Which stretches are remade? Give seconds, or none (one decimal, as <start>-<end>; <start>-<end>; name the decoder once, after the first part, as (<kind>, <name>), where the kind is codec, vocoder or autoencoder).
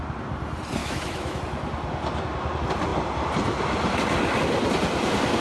0.8-1.4 (autoencoder, DAC-VAE)